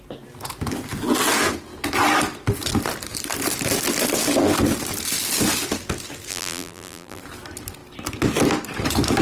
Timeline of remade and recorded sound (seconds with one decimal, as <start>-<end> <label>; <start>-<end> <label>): 0.0-6.3 recorded; 6.3-7.2 remade; 7.2-9.2 recorded